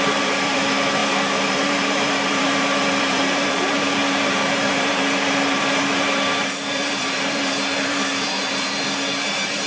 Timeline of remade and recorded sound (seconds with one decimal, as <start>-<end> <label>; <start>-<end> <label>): 0.0-9.7 remade